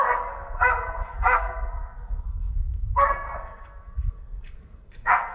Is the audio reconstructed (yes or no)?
yes